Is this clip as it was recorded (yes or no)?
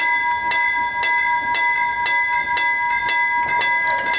yes